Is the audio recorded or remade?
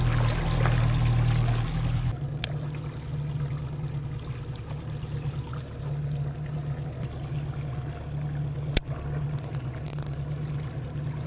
recorded